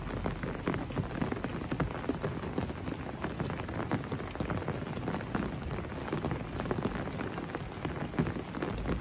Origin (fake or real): real